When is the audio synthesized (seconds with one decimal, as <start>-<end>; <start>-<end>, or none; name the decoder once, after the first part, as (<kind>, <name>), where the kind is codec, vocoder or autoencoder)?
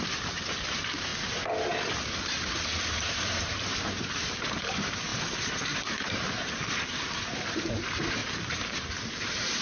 0.0-1.1 (vocoder, BigVGAN v2); 2.8-9.6